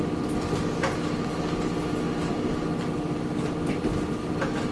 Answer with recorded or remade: recorded